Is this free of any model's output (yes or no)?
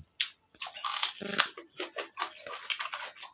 yes